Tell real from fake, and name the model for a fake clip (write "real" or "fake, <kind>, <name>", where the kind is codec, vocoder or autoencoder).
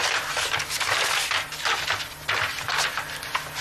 real